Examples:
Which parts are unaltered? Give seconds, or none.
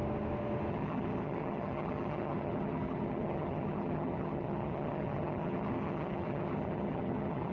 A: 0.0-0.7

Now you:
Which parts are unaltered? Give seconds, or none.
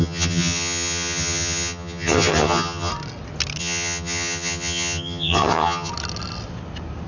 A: 2.9-3.6; 5.9-7.1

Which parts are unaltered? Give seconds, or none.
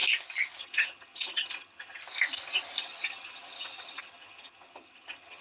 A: 0.0-0.6; 2.0-2.8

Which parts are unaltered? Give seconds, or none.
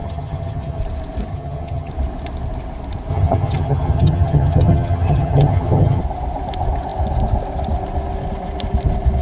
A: 0.8-1.3; 1.9-3.1; 6.0-9.2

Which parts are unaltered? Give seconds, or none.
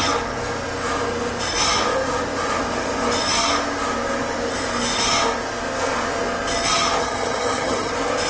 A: 0.0-7.0; 7.9-8.3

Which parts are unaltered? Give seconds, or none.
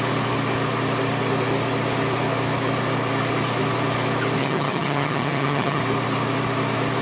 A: 0.0-4.4; 5.8-7.0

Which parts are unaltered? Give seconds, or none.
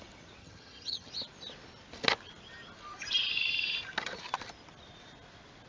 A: 0.0-0.4; 1.1-5.7